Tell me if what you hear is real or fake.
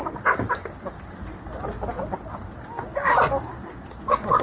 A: real